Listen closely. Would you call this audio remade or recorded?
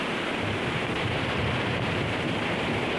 remade